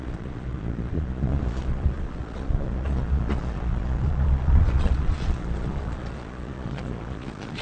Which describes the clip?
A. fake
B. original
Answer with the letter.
A